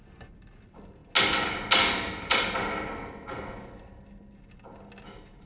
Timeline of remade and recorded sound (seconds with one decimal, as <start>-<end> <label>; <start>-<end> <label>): 0.0-5.5 recorded